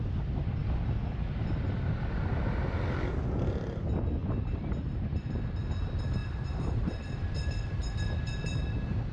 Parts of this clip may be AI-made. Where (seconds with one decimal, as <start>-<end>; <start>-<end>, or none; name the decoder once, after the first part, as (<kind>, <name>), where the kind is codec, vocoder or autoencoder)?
4.2-5.3 (vocoder, BigVGAN v2); 6.2-7.9